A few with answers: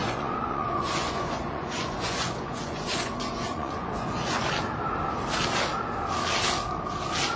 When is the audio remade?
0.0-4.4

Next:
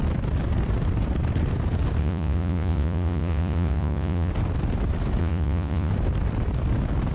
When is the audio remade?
2.0-4.3; 5.2-5.9

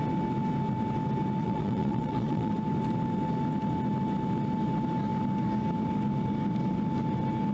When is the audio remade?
1.4-2.5

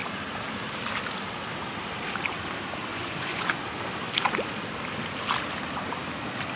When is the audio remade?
2.9-3.6

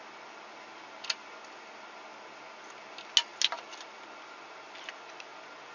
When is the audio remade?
none

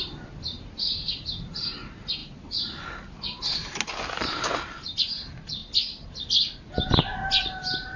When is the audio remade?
none

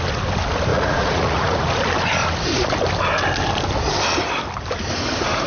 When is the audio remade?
0.7-1.7